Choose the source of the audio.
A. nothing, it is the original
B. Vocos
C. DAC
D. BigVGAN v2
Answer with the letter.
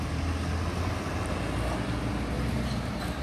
A